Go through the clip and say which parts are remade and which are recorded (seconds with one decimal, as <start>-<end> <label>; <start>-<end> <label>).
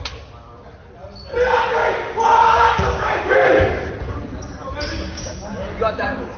0.0-1.7 recorded; 1.7-3.9 remade; 3.9-4.9 recorded; 4.9-5.5 remade; 5.5-6.4 recorded